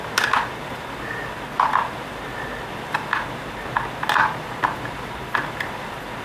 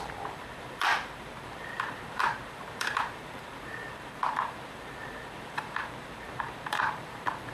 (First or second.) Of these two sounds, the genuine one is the first